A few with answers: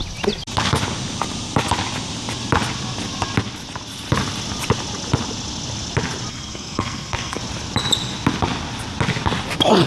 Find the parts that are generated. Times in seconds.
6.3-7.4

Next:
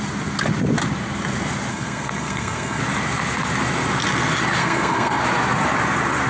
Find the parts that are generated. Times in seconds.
1.7-2.8; 4.6-5.2

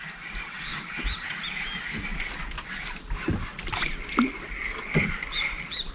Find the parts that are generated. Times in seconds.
none

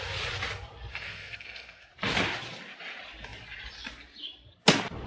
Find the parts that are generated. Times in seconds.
0.9-1.9